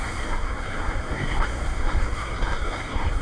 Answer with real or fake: fake